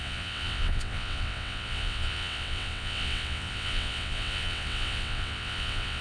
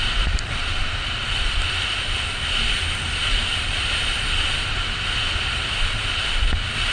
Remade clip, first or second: first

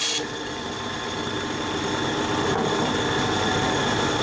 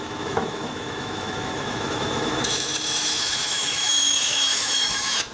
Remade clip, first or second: second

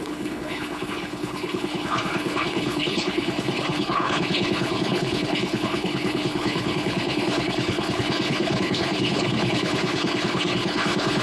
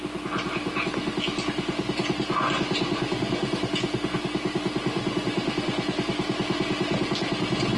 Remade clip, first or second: first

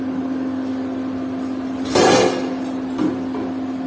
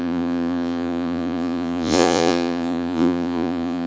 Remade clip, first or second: second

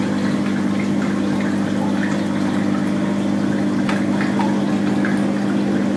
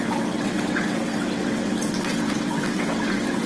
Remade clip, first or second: second